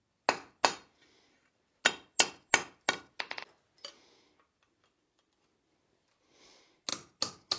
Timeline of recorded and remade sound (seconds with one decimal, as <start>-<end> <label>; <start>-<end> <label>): 0.0-7.6 recorded